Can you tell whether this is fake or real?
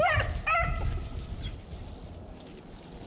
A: real